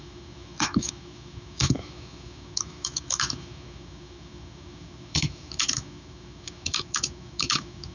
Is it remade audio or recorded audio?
remade